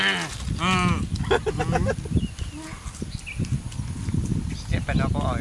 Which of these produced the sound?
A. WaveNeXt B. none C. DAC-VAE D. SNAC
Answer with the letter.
B